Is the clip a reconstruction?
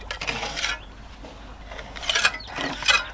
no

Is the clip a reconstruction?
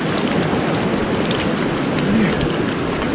no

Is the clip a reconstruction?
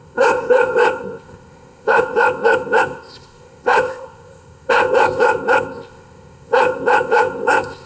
yes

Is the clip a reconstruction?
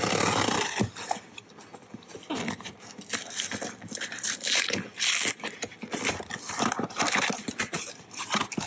no